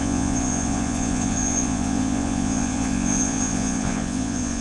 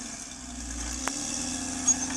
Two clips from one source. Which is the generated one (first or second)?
first